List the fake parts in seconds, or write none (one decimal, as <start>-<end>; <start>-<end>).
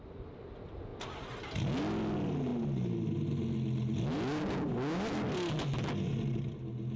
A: none